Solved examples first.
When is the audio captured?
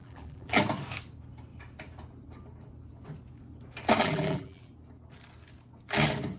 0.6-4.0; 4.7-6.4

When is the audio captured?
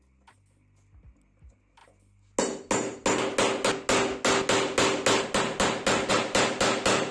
0.0-7.1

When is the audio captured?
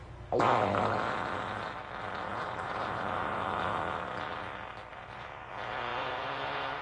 0.0-2.3; 3.6-4.9; 5.5-5.9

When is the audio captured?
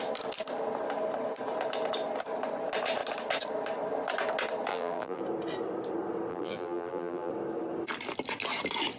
0.0-4.7; 5.2-6.3; 7.3-9.0